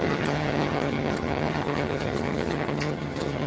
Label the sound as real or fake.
fake